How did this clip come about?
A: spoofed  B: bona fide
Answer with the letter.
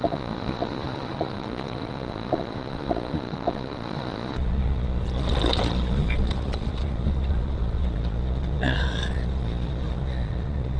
A